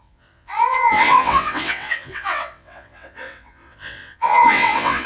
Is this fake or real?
fake